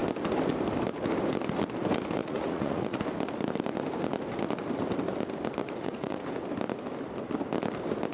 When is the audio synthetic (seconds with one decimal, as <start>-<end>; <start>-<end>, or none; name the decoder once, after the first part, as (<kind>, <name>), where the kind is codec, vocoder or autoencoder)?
2.2-3.0 (vocoder, Vocos); 5.6-6.2